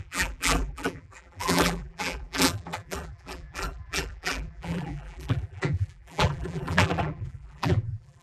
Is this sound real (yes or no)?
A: no